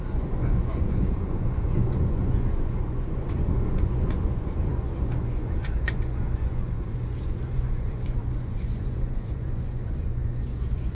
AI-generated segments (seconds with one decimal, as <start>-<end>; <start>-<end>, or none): 0.0-10.9